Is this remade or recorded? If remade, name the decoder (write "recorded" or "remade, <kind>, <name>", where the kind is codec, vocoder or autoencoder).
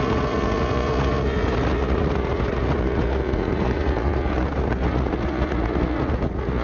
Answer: remade, vocoder, Vocos